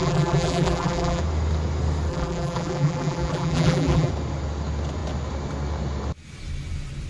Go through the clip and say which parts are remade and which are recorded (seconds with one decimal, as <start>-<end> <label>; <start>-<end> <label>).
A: 0.0-1.2 remade; 1.2-2.1 recorded; 2.1-4.1 remade; 4.1-7.1 recorded